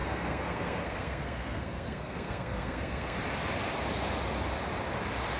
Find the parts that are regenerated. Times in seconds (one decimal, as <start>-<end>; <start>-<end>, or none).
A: 0.0-3.2